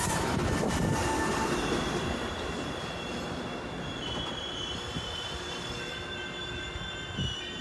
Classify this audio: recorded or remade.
recorded